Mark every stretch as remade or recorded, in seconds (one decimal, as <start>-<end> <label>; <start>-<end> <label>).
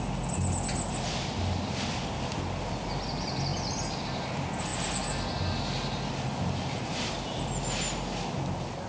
0.0-8.9 recorded